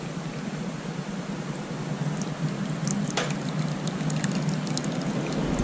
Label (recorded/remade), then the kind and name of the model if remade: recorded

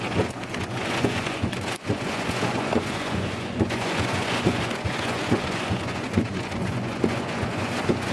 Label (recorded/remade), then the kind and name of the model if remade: remade, vocoder, Vocos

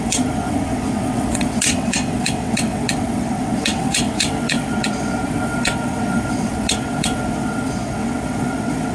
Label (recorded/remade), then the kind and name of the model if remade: remade, vocoder, WaveNeXt